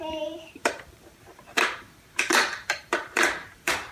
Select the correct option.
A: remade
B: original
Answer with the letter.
A